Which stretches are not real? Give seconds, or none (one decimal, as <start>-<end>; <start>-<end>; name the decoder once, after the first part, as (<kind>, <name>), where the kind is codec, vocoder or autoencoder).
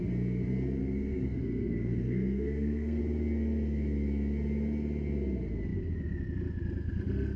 0.8-3.0 (codec, SNAC)